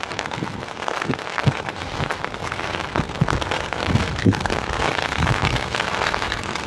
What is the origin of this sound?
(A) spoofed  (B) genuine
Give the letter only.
A